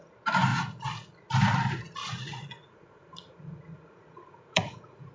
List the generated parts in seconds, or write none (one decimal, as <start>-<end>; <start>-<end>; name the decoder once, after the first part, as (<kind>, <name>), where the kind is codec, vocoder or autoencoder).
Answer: 0.5-1.3 (vocoder, Vocos); 2.0-5.1